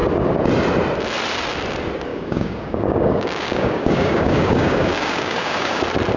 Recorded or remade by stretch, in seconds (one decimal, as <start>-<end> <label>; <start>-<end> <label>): 0.0-2.1 recorded; 2.1-5.8 remade; 5.8-6.2 recorded